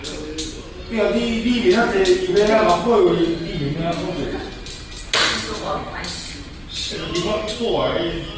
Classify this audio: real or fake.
real